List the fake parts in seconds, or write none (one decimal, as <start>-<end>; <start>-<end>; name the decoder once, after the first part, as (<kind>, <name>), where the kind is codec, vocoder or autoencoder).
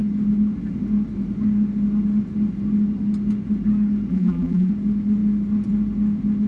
4.1-4.7 (vocoder, BigVGAN v2)